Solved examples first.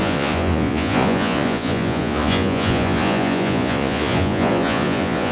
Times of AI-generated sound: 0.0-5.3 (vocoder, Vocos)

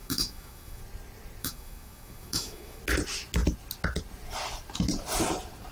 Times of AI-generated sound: 0.0-0.8 (autoencoder, DAC-VAE); 1.4-2.8

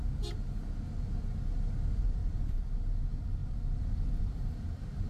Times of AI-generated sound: 2.2-2.8 (vocoder, BigVGAN v2); 3.4-4.2

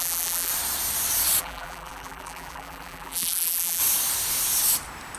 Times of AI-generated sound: 0.0-0.5 (vocoder, BigVGAN v2); 1.4-3.8

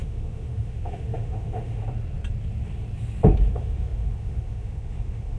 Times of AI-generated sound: 0.0-1.8 (autoencoder, DAC-VAE); 3.5-5.4

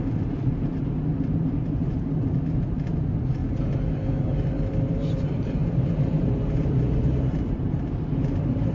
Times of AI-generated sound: 0.0-3.4 (vocoder, BigVGAN v2); 4.9-8.7

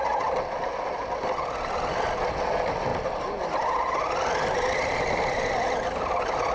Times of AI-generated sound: none